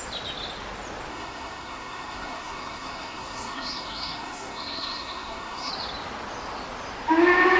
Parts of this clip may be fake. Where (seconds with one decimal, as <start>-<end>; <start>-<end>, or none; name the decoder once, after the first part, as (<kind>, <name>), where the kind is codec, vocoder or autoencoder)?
1.1-5.7 (codec, SNAC)